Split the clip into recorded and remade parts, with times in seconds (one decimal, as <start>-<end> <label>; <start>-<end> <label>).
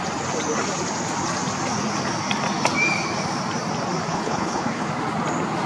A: 0.0-4.1 recorded; 4.1-4.9 remade; 4.9-5.7 recorded